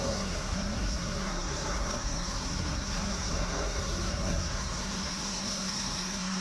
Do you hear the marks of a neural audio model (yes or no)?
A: yes